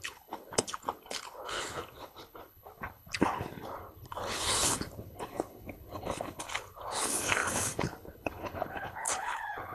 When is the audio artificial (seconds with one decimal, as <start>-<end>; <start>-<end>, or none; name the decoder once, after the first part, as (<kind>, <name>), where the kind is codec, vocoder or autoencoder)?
0.0-9.7 (codec, HILCodec)